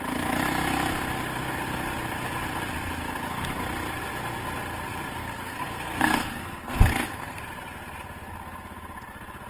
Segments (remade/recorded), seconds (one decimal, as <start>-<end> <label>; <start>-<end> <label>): 0.0-5.2 recorded; 5.2-7.4 remade; 7.4-9.5 recorded